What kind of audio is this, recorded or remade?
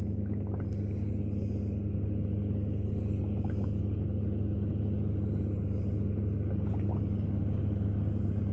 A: recorded